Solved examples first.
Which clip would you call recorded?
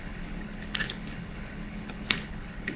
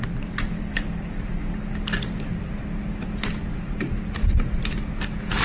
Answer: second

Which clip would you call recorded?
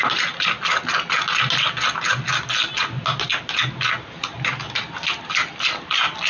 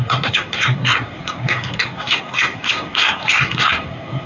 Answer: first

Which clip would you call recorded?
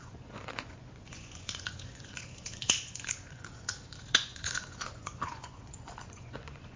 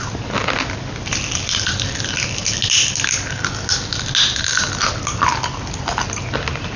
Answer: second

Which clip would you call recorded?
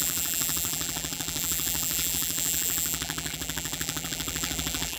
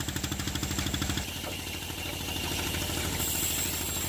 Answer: second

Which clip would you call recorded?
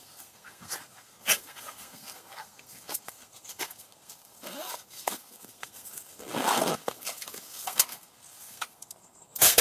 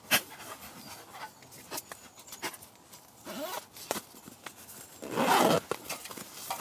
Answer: second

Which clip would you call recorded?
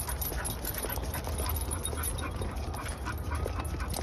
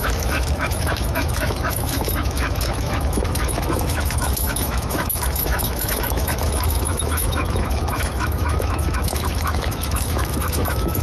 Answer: first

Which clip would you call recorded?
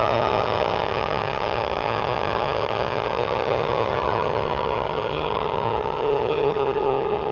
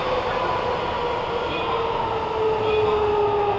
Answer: second